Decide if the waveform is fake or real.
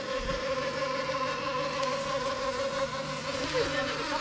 real